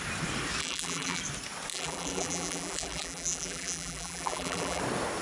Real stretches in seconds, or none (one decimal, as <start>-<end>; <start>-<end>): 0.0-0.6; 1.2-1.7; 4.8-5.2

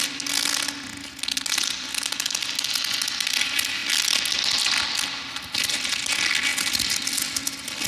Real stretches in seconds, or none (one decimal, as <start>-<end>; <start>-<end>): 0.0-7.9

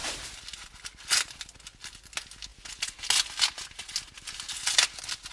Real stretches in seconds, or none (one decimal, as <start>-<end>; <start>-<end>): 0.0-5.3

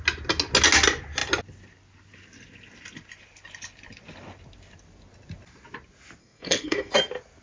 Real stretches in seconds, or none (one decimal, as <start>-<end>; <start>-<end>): 0.0-6.2; 6.9-7.4

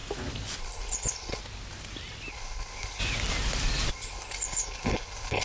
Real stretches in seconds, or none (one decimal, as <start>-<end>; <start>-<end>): 0.0-0.6; 1.4-2.3; 3.0-3.9

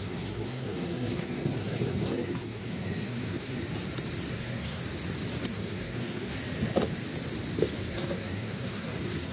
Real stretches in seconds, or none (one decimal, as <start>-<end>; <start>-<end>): 3.6-4.3; 4.8-5.4; 6.4-7.9

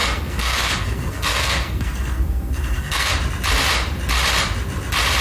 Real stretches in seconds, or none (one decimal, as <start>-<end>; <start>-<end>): 3.1-5.2

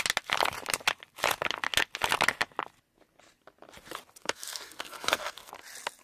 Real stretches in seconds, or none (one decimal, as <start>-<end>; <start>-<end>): 0.0-4.2; 5.5-6.0